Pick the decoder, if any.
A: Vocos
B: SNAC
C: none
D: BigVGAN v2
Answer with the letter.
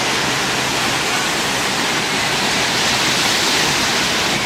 C